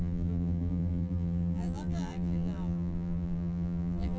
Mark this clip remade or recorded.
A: remade